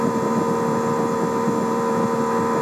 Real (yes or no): yes